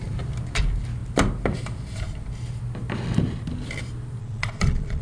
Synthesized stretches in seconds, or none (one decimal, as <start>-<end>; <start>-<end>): 4.2-5.0